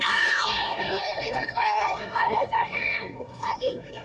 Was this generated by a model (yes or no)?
yes